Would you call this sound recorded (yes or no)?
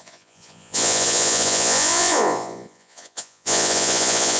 no